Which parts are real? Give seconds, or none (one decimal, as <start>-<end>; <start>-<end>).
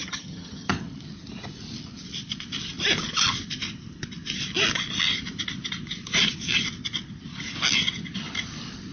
0.7-8.9